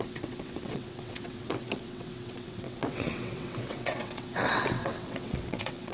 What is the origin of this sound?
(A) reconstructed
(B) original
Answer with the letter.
A